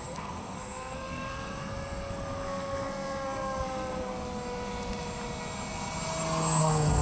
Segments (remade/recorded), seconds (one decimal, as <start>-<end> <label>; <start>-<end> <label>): 0.0-4.1 remade; 4.1-6.6 recorded; 6.6-7.0 remade